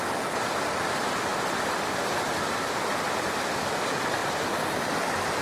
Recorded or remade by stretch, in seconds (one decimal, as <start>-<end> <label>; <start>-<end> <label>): 0.0-5.4 recorded